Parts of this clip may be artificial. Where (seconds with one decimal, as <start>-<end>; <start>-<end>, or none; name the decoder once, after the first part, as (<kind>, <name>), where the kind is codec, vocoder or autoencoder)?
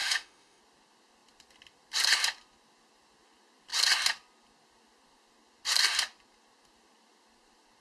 0.0-0.6 (autoencoder, DAC-VAE)